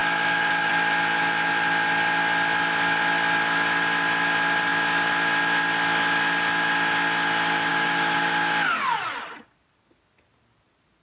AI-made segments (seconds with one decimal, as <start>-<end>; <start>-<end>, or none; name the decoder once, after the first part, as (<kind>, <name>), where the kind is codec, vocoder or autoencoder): 0.0-0.7 (autoencoder, DAC-VAE); 7.7-8.3